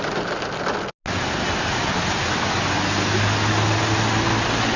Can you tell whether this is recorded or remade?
recorded